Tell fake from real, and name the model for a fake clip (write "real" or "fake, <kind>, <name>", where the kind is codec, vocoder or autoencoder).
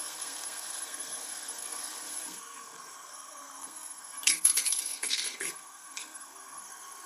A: fake, codec, SNAC